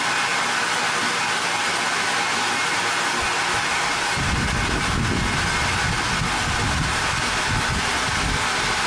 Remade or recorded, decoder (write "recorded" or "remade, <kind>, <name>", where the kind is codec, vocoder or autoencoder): recorded